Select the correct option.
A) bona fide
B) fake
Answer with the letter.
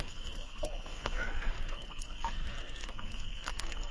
B